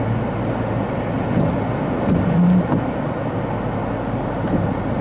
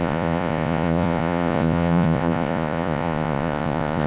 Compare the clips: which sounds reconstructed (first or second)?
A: second